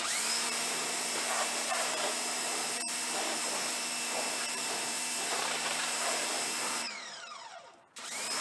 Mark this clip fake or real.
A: fake